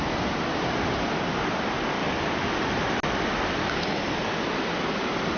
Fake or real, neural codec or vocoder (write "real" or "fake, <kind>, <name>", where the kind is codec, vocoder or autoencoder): real